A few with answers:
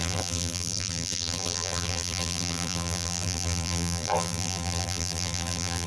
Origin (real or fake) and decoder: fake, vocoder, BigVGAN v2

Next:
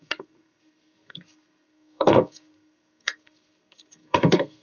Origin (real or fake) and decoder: fake, codec, SNAC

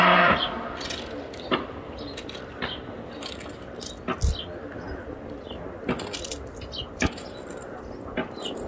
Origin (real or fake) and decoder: real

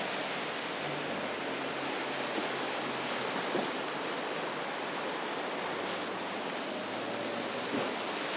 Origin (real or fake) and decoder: real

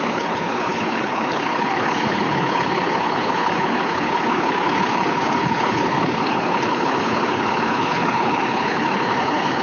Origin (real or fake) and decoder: fake, codec, HILCodec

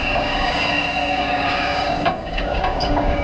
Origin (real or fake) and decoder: fake, codec, DAC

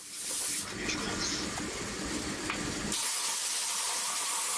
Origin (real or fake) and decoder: real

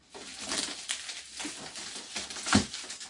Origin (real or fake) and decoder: real